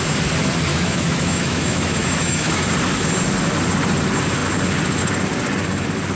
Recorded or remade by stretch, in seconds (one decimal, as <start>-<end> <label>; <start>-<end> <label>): 0.0-0.7 recorded; 0.7-2.6 remade; 2.6-6.2 recorded